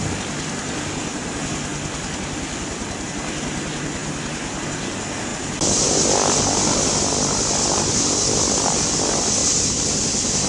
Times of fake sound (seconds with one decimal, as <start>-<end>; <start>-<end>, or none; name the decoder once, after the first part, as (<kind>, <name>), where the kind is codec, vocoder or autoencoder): 4.0-4.6 (vocoder, BigVGAN v2)